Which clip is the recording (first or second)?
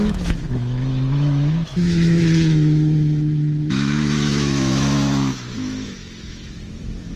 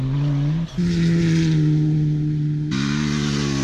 second